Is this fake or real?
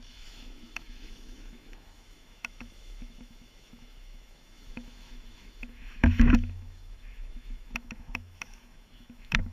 fake